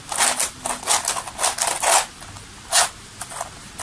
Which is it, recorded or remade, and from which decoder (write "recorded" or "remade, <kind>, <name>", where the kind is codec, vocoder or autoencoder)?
recorded